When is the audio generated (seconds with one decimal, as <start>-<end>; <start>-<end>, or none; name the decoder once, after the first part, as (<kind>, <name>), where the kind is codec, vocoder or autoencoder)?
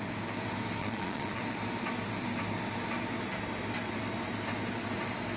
0.8-1.4 (vocoder, Vocos)